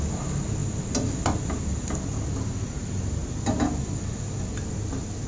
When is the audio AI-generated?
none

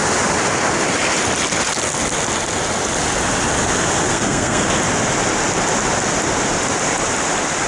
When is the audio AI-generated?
4.1-4.7 (codec, SNAC)

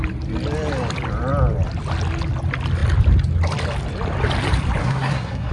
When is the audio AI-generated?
4.8-5.5 (codec, SNAC)

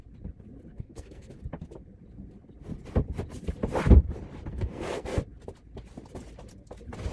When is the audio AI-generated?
0.7-1.3 (codec, SNAC); 4.5-5.2

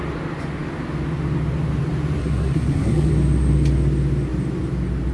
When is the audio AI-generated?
2.2-3.1 (codec, SNAC)

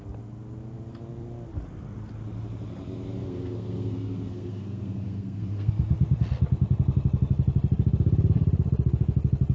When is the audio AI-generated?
3.2-5.7 (codec, SNAC)

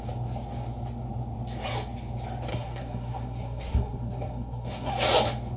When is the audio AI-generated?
2.5-4.9 (codec, SNAC)

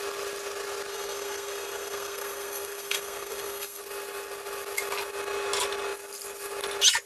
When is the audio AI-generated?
0.9-3.8 (codec, SNAC)